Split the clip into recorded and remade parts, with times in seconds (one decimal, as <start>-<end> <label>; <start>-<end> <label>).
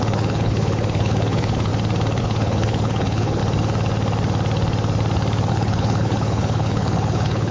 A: 0.0-1.7 remade; 1.7-2.2 recorded; 2.2-3.4 remade; 3.4-5.5 recorded; 5.5-7.5 remade